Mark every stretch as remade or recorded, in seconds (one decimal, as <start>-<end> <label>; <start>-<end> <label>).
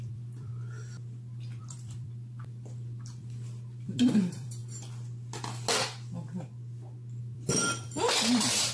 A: 0.0-0.5 remade; 0.5-1.6 recorded; 1.6-4.6 remade; 4.6-7.2 recorded; 7.2-8.7 remade